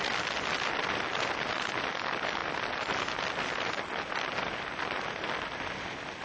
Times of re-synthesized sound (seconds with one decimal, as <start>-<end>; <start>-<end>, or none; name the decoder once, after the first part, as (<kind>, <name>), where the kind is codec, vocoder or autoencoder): none